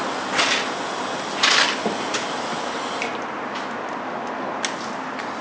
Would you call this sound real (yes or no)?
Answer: yes